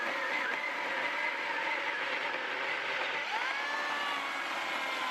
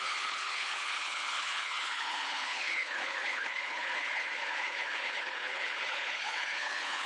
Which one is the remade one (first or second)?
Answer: second